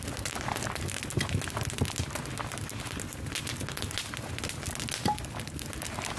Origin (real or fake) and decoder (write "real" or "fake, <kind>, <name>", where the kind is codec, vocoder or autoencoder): real